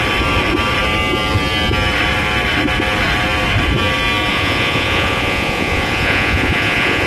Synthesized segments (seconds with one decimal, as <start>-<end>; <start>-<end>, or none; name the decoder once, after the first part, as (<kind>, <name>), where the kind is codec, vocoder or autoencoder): 4.3-7.1 (vocoder, Vocos)